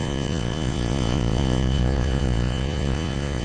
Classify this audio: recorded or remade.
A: remade